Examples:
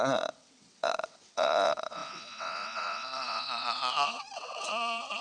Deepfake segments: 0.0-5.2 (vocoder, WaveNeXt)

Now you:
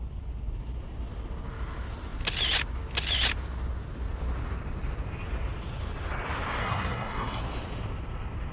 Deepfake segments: 6.6-7.4 (codec, SNAC)

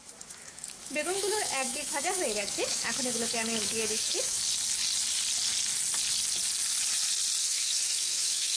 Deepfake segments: 0.0-4.4 (autoencoder, DAC-VAE); 7.4-8.6

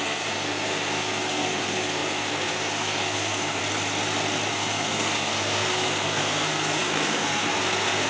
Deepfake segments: 0.0-3.6 (codec, SNAC); 4.5-8.1

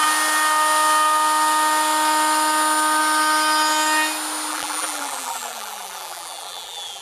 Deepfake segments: 4.5-7.0 (vocoder, BigVGAN v2)